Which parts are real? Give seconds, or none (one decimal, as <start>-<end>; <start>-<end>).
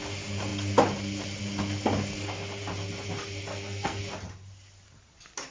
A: 0.0-3.5; 4.0-5.5